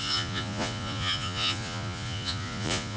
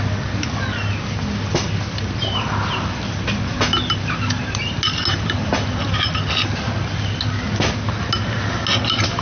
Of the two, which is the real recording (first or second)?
second